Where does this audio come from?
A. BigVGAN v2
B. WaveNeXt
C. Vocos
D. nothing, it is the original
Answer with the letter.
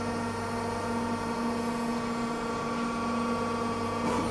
D